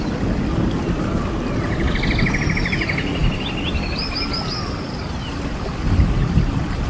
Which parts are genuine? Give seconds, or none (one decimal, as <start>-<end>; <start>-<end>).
0.0-6.2